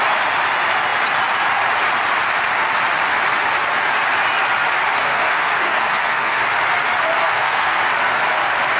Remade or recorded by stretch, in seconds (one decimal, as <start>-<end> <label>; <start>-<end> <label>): 0.0-5.0 recorded; 5.0-6.4 remade; 6.4-7.2 recorded; 7.2-7.8 remade; 7.8-8.8 recorded